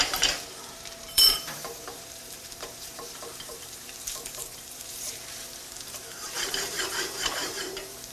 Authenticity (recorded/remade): remade